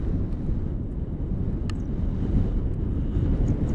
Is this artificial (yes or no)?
no